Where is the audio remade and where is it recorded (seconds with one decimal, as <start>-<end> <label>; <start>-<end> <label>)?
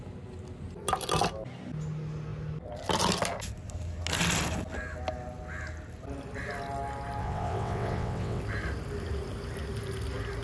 0.0-7.2 recorded; 7.2-8.4 remade; 8.4-10.4 recorded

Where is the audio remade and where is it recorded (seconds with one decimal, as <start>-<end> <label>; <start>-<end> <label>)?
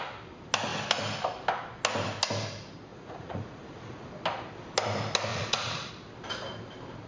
0.0-2.9 recorded; 2.9-4.1 remade; 4.1-5.3 recorded; 5.3-5.9 remade; 5.9-7.1 recorded